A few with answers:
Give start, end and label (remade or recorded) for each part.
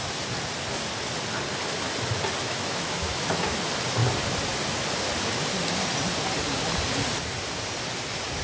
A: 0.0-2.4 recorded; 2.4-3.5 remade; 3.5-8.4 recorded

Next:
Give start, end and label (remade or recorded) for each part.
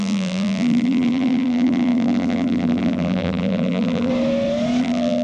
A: 0.0-4.1 remade; 4.1-4.8 recorded; 4.8-5.2 remade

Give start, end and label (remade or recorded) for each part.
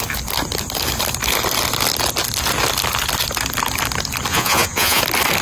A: 0.0-4.3 recorded; 4.3-5.0 remade; 5.0-5.4 recorded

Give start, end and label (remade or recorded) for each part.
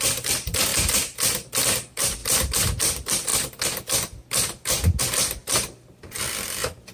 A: 0.0-0.7 remade; 0.7-1.6 recorded; 1.6-2.2 remade; 2.2-2.8 recorded; 2.8-3.3 remade; 3.3-5.0 recorded; 5.0-6.9 remade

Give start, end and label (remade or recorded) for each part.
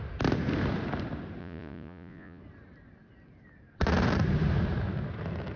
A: 0.0-1.4 recorded; 1.4-2.4 remade; 2.4-5.6 recorded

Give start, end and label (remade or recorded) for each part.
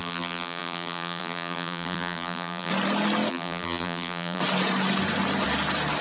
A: 0.0-2.7 remade; 2.7-3.3 recorded; 3.3-4.4 remade; 4.4-6.0 recorded